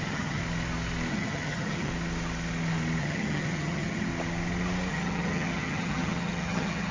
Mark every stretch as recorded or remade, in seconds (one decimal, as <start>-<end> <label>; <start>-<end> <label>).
0.0-0.4 remade; 0.4-1.1 recorded; 1.1-1.9 remade; 1.9-3.0 recorded; 3.0-4.1 remade; 4.1-4.9 recorded; 4.9-6.9 remade

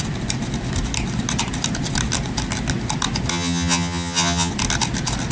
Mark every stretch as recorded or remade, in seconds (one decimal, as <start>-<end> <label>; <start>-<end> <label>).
0.0-3.3 recorded; 3.3-4.5 remade; 4.5-5.3 recorded

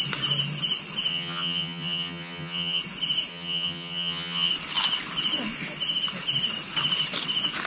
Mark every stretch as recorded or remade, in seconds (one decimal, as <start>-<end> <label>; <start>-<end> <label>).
0.0-1.1 recorded; 1.1-2.8 remade; 2.8-3.3 recorded; 3.3-4.5 remade; 4.5-7.7 recorded

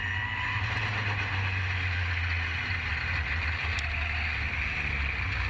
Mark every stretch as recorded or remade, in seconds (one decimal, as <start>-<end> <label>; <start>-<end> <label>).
0.0-5.5 recorded

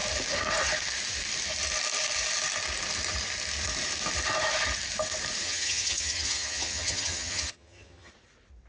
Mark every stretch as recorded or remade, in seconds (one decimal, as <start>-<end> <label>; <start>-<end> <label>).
0.0-5.4 recorded; 5.4-8.1 remade; 8.1-8.7 recorded

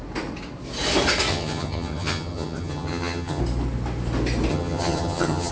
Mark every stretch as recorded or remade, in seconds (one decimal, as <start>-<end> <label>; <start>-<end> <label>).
0.0-1.3 recorded; 1.3-3.4 remade; 3.4-4.5 recorded; 4.5-5.5 remade

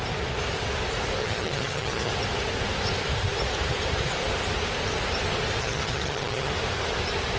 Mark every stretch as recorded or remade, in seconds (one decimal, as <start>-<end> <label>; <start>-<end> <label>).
0.0-1.2 recorded; 1.2-2.1 remade; 2.1-5.6 recorded; 5.6-6.5 remade; 6.5-7.4 recorded

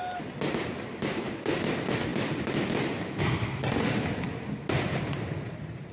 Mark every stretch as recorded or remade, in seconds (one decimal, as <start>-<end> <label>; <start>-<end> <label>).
0.0-5.9 recorded